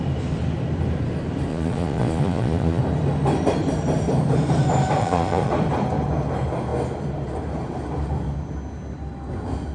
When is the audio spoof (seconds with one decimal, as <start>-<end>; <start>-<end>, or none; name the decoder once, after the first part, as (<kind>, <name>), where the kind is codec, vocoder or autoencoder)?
1.5-2.8 (vocoder, Vocos); 5.0-5.5